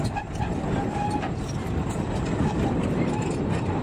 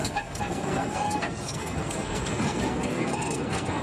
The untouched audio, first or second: first